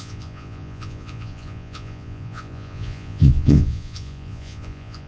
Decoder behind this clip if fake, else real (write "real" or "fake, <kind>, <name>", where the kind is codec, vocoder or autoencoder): fake, vocoder, Vocos